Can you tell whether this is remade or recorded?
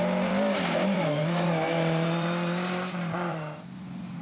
remade